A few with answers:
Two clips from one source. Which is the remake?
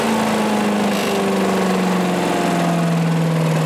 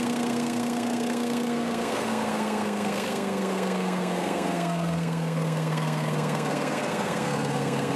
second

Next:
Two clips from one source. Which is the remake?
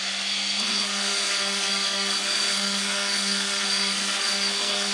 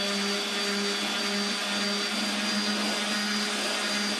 first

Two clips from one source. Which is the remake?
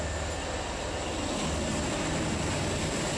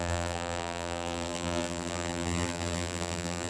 second